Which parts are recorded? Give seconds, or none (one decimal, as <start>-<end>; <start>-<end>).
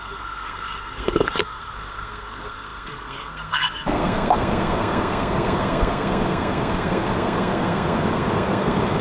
none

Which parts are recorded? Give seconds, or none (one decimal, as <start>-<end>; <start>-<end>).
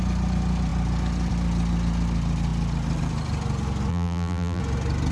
0.0-3.9; 4.6-5.1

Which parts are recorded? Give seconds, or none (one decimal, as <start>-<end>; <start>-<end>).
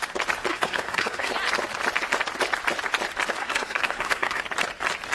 0.0-0.5; 1.3-3.4; 4.4-5.1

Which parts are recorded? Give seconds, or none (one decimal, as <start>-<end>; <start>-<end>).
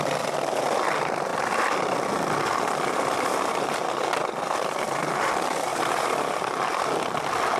0.0-5.7; 6.9-7.6